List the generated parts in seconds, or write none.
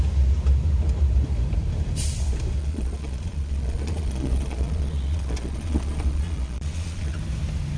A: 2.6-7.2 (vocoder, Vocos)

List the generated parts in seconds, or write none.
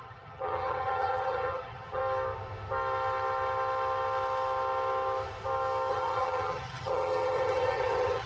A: 0.0-2.0 (vocoder, HiFi-GAN); 5.9-8.3